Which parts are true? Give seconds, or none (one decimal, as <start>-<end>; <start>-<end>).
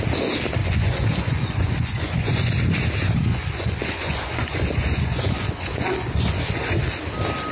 0.0-0.6; 2.6-3.3; 6.8-7.5